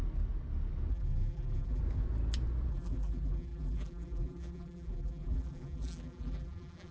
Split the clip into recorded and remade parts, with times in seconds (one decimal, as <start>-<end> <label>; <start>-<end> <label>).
0.0-0.9 recorded; 0.9-1.8 remade; 1.8-2.7 recorded; 2.7-6.9 remade